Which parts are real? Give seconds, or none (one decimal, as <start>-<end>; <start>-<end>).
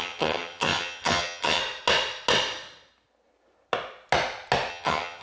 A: 1.6-4.7